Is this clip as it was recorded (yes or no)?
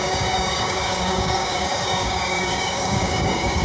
no